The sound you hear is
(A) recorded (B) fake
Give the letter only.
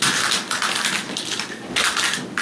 A